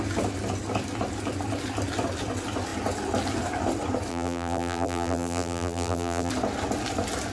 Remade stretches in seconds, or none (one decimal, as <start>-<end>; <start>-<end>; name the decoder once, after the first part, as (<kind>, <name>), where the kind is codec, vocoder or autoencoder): 4.1-6.3 (vocoder, BigVGAN v2)